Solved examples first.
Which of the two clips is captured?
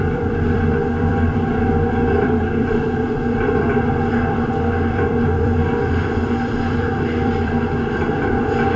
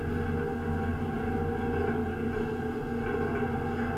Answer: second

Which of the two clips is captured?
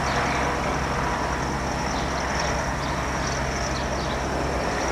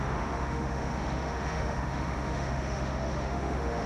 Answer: first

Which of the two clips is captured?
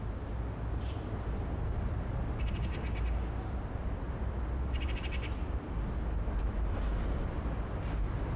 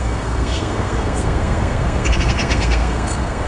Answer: first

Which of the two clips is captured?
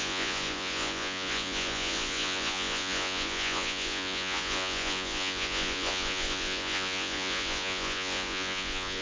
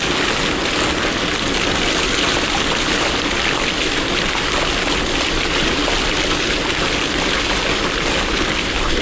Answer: second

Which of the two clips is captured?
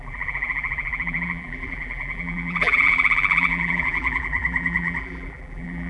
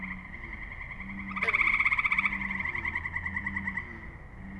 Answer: second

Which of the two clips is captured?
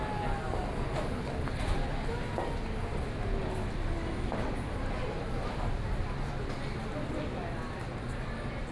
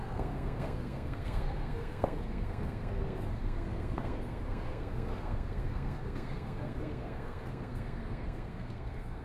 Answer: first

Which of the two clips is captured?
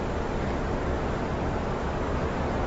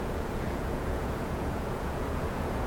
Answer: first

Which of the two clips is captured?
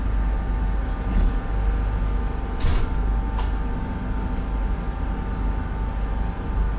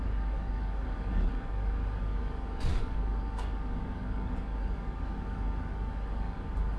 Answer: first